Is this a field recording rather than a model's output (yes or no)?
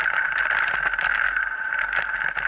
yes